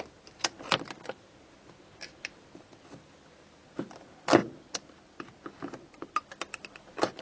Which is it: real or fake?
real